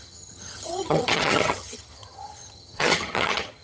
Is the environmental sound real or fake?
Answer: fake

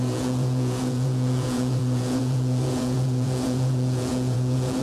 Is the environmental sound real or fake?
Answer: fake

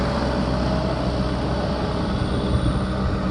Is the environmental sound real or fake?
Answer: real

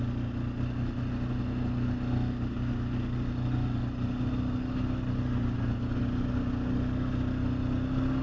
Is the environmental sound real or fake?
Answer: real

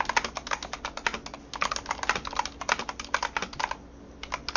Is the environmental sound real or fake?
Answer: real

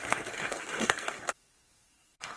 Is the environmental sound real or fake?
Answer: fake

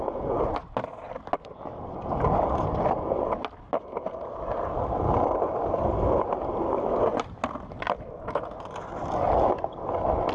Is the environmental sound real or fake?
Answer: real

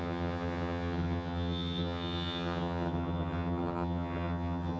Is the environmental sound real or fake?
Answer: fake